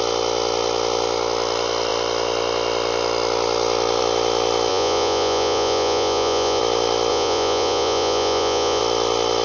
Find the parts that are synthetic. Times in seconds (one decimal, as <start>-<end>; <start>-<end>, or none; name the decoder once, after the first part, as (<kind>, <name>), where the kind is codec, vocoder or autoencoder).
4.7-6.6 (vocoder, Vocos); 7.1-8.8

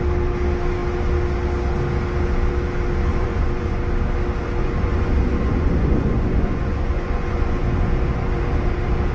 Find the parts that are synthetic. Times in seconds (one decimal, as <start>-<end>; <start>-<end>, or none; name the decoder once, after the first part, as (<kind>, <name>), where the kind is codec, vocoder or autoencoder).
3.1-3.8 (vocoder, Vocos); 4.6-8.4

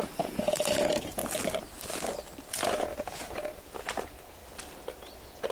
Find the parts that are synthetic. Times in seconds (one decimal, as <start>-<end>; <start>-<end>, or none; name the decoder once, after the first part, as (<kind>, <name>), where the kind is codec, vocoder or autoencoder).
0.0-1.2 (vocoder, Vocos); 2.5-4.4; 4.9-5.5